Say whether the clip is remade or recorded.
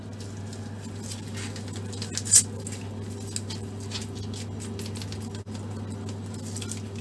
recorded